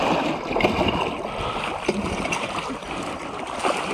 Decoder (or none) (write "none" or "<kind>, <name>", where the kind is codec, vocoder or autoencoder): none